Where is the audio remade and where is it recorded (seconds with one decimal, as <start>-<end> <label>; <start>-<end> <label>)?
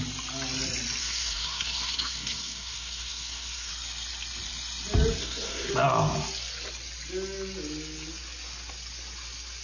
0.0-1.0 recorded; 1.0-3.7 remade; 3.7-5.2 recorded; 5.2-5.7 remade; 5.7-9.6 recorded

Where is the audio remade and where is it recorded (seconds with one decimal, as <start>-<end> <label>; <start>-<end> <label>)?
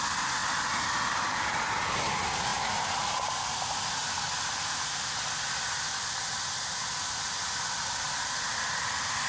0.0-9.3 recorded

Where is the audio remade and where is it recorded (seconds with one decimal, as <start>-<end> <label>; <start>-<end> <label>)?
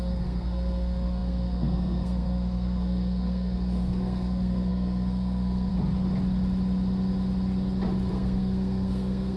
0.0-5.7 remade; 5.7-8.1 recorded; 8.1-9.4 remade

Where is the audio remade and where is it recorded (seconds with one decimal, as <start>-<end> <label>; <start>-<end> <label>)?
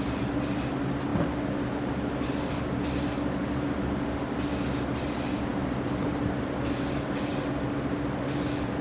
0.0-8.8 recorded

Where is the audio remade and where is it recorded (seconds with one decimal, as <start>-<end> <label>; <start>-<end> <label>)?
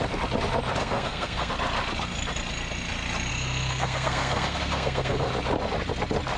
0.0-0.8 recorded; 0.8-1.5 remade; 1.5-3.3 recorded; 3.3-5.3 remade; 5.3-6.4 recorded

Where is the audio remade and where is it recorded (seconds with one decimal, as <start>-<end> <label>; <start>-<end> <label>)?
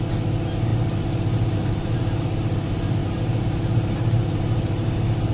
0.0-5.3 recorded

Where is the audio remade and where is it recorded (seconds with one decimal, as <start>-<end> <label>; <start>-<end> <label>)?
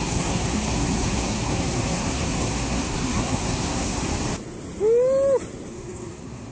0.0-4.1 remade; 4.1-5.7 recorded; 5.7-6.5 remade